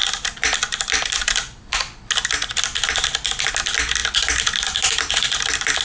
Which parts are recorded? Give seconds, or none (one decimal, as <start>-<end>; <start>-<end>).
0.0-5.8